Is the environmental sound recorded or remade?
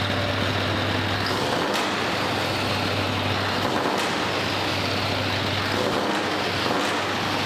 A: recorded